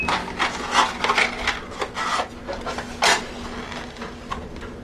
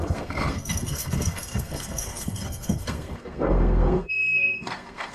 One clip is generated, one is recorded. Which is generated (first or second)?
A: second